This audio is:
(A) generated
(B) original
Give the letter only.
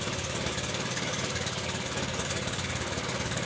A